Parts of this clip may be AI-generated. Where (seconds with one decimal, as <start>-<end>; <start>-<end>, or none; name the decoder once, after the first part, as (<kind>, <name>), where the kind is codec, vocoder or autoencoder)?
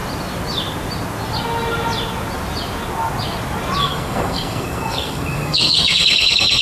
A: 3.8-6.6 (codec, SNAC)